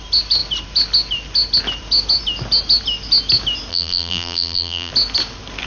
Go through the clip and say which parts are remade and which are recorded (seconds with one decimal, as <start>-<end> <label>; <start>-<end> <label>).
0.0-3.7 recorded; 3.7-4.9 remade; 4.9-5.7 recorded